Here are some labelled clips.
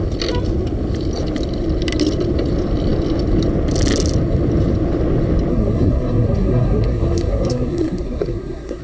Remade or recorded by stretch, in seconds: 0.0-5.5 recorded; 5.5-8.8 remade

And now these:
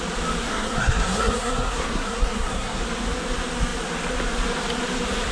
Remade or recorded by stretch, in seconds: 0.0-0.4 recorded; 0.4-2.8 remade; 2.8-5.3 recorded

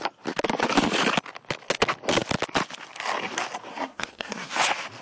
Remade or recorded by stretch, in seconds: 0.0-3.7 recorded; 3.7-4.5 remade; 4.5-5.0 recorded